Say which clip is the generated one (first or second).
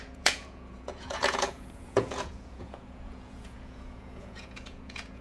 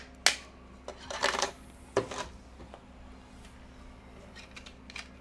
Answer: first